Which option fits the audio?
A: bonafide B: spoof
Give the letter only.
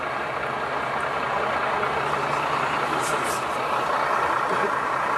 A